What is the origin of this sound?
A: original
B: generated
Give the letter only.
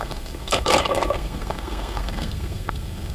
B